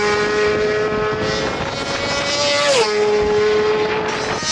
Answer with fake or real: real